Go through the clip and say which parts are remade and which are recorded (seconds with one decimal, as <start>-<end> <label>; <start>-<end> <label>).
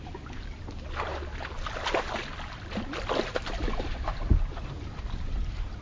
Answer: 0.0-5.8 recorded